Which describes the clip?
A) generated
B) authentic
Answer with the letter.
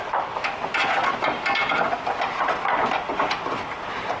B